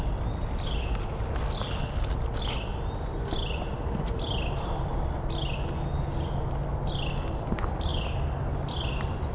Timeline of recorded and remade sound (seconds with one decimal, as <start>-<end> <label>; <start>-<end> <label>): 0.0-9.3 recorded